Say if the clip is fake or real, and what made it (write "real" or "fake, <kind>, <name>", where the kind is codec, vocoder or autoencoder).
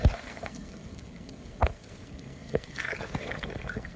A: fake, codec, SNAC